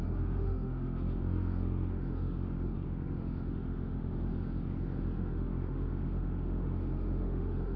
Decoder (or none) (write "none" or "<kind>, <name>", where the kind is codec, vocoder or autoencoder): autoencoder, DAC-VAE